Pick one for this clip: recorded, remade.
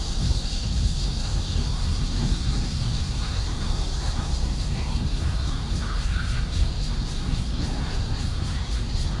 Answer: remade